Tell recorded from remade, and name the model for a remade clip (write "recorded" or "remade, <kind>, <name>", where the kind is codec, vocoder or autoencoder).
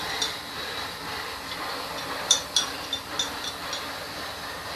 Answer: recorded